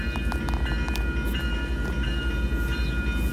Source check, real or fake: real